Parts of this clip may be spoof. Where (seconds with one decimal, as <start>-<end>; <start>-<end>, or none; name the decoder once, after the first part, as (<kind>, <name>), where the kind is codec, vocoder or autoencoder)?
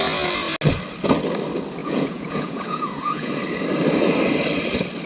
1.8-3.3 (vocoder, Vocos)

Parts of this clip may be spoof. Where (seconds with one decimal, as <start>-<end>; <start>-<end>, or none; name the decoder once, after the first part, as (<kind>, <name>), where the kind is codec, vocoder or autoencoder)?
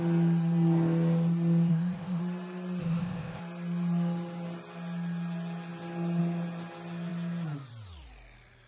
1.7-2.2 (codec, ZipCodec); 2.8-3.4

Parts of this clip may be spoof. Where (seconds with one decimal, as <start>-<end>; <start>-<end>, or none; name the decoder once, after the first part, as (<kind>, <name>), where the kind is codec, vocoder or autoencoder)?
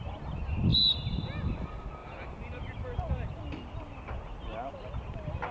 2.0-3.4 (vocoder, BigVGAN v2)